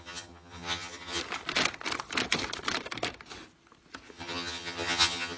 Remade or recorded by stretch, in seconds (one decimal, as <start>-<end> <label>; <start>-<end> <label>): 0.0-1.2 remade; 1.2-4.1 recorded; 4.1-5.4 remade